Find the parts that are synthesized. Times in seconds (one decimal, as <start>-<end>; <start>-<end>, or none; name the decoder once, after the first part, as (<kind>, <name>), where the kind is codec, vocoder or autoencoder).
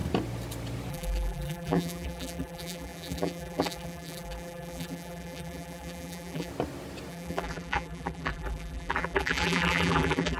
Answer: 0.9-6.5 (vocoder, BigVGAN v2); 7.1-10.4